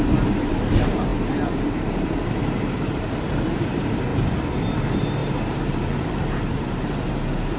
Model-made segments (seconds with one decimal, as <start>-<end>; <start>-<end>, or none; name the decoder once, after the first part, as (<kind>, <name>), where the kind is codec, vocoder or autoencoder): 0.0-4.1 (vocoder, BigVGAN v2); 4.8-7.6